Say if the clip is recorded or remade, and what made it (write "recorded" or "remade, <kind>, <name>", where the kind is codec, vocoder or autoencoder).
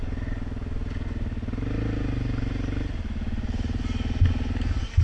recorded